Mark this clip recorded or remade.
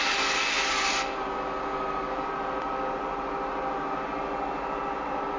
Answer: recorded